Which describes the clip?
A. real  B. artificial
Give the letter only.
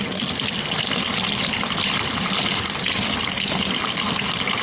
A